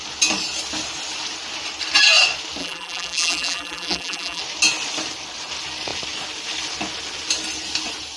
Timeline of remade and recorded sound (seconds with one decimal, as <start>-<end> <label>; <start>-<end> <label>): 0.0-2.6 recorded; 2.6-4.4 remade; 4.4-8.2 recorded